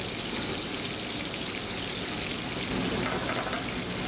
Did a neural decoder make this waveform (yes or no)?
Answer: no